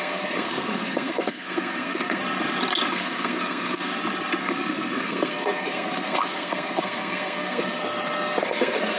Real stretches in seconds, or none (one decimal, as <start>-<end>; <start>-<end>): 2.2-2.9; 3.9-4.4; 7.8-8.4